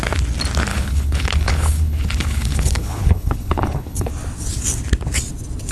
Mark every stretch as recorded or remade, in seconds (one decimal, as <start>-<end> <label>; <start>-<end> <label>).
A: 0.0-0.7 recorded; 0.7-4.1 remade; 4.1-5.7 recorded